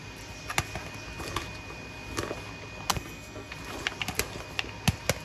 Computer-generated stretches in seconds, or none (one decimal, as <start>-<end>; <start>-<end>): 2.9-3.5